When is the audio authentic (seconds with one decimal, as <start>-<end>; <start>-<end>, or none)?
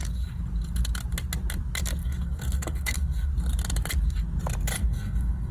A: 0.0-2.0; 3.3-4.8